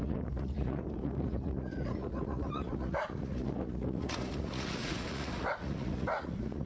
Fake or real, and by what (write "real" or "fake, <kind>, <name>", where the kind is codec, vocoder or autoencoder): fake, vocoder, Vocos